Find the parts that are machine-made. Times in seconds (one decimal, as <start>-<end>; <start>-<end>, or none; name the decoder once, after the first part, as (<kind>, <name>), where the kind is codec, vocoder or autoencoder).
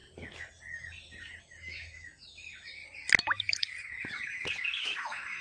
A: 1.4-2.8 (autoencoder, DAC-VAE); 4.8-5.4